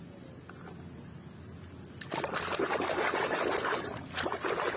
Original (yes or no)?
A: yes